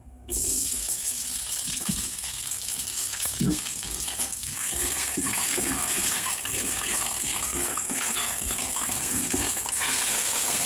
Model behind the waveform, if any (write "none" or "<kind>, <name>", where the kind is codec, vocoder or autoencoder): codec, SNAC